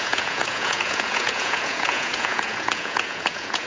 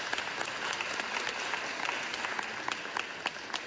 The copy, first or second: first